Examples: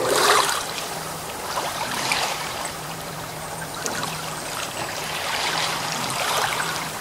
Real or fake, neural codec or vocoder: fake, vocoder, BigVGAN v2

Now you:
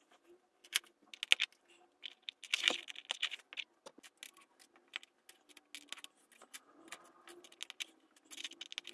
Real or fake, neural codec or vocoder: real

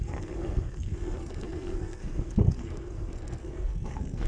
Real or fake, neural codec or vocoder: fake, codec, SNAC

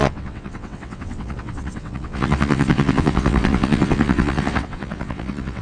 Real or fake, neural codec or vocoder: fake, vocoder, WaveNeXt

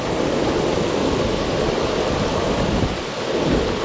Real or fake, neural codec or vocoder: real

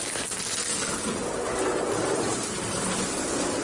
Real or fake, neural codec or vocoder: real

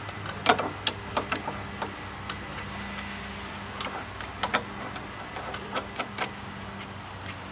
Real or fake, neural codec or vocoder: real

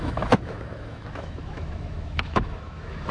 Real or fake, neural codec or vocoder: fake, autoencoder, DAC-VAE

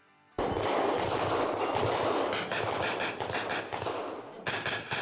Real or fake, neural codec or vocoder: real